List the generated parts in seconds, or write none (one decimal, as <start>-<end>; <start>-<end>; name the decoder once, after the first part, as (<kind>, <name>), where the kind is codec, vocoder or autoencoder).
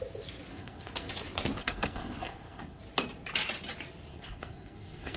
0.5-1.1 (codec, SNAC); 1.6-2.8; 4.1-5.2